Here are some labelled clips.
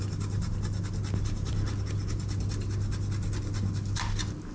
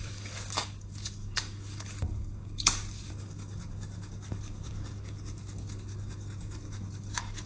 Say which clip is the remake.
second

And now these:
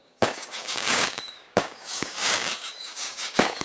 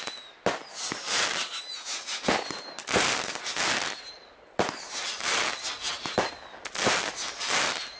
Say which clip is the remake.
first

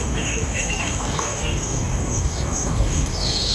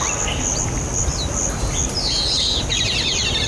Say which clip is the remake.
first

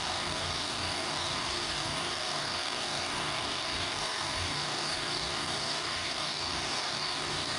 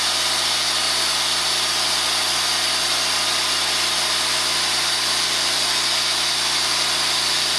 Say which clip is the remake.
first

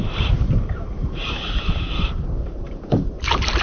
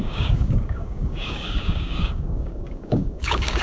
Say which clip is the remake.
second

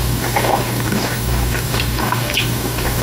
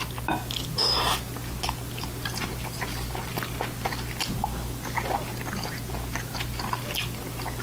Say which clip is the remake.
first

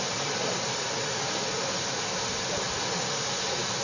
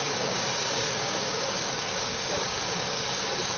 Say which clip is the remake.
second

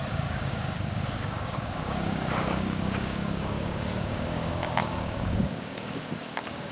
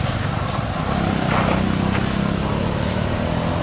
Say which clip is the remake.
first